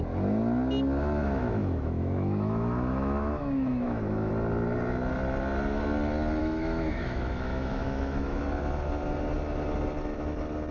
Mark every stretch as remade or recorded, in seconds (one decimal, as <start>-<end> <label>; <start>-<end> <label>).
0.0-1.2 recorded; 1.2-4.3 remade; 4.3-6.4 recorded; 6.4-8.4 remade; 8.4-10.7 recorded